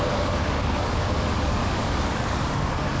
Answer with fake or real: fake